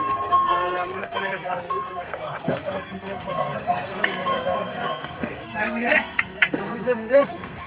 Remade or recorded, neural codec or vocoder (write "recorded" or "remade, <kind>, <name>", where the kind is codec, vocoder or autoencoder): remade, codec, SNAC